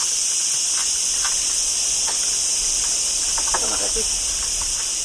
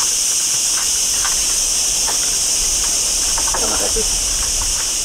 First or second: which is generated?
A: second